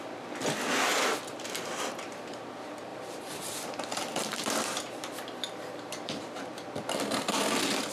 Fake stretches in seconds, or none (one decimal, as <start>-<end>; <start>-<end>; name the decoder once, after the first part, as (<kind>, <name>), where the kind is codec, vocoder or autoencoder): 0.9-2.3 (vocoder, BigVGAN v2); 2.9-6.5